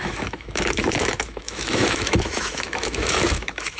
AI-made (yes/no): yes